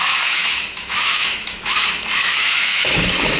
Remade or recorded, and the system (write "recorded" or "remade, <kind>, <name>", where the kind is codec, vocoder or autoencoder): remade, autoencoder, DAC-VAE